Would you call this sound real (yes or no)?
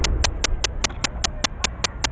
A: yes